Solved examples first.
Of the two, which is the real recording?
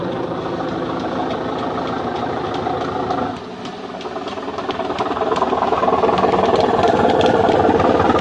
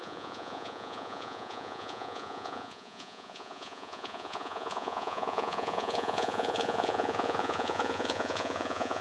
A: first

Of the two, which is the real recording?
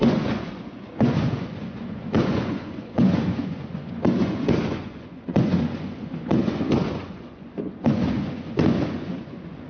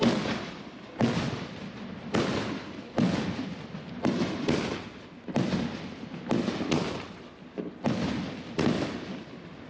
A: second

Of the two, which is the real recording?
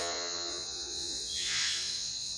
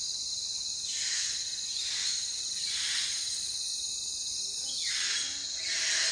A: second